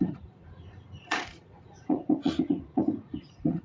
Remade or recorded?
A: remade